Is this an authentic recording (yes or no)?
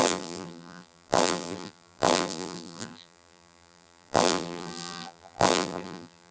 no